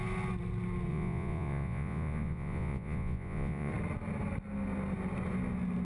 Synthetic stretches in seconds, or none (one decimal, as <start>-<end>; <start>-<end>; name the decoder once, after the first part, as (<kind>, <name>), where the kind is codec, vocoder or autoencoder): 0.9-3.7 (vocoder, Vocos)